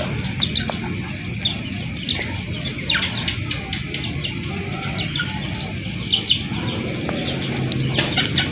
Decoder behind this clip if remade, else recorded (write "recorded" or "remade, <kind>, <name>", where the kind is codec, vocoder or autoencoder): recorded